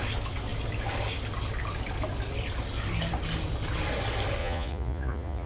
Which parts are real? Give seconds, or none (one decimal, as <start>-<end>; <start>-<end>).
0.0-4.4